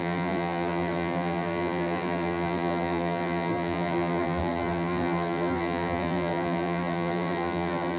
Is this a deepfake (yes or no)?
yes